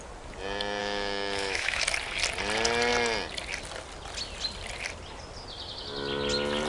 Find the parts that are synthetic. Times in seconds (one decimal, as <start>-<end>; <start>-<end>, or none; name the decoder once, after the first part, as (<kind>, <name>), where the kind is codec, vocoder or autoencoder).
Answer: 0.8-1.8 (autoencoder, DAC-VAE)